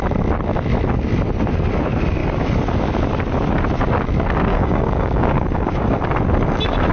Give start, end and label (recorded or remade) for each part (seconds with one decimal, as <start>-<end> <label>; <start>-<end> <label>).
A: 0.0-4.5 recorded; 4.5-6.0 remade; 6.0-6.9 recorded